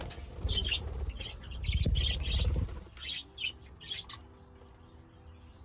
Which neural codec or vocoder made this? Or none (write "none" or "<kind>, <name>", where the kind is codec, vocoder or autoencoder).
none